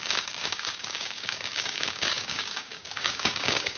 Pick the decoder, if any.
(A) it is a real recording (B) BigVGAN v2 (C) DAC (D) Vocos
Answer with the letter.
C